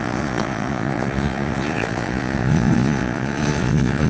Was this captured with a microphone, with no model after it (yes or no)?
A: no